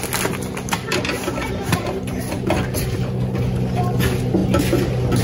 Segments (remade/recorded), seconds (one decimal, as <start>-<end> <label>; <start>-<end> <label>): 0.0-5.2 recorded